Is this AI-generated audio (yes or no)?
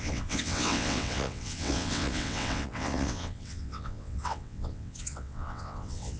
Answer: yes